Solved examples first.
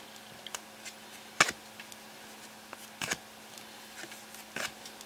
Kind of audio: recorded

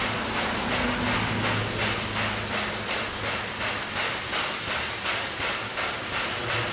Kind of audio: recorded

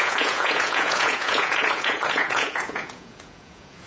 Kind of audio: remade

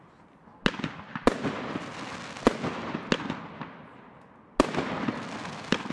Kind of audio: recorded